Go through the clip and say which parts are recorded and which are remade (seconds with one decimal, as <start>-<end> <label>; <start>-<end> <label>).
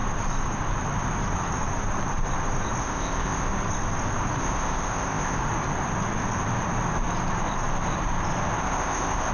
0.0-2.8 recorded; 2.8-3.5 remade; 3.5-4.4 recorded; 4.4-5.4 remade; 5.4-8.6 recorded; 8.6-9.3 remade